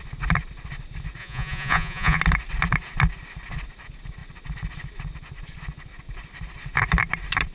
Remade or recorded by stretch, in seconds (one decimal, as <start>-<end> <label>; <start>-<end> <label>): 0.0-1.2 recorded; 1.2-2.2 remade; 2.2-7.5 recorded